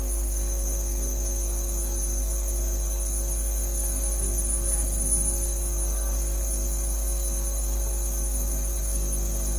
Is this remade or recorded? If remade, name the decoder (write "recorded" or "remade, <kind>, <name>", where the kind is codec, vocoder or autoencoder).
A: remade, codec, SNAC